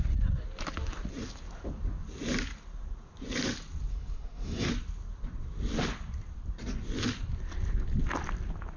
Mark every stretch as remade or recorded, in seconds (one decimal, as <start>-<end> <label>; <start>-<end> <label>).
0.0-3.9 recorded; 3.9-4.7 remade; 4.7-8.8 recorded